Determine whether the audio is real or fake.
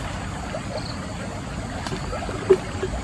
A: real